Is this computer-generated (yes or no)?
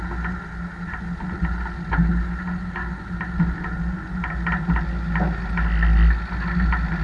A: no